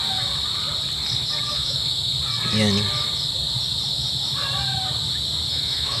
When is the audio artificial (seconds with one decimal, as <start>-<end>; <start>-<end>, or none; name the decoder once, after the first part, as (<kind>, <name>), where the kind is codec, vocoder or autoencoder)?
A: 1.5-2.1 (autoencoder, DAC-VAE); 5.5-6.0